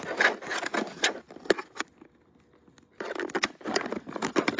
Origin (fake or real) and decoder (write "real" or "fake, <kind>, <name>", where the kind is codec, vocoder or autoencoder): real